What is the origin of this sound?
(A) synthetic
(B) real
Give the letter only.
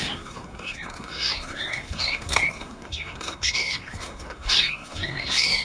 A